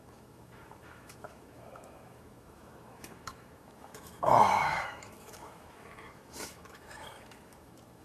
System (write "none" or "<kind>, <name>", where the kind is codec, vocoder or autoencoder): autoencoder, DAC-VAE